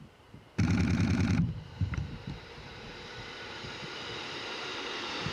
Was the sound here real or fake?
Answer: fake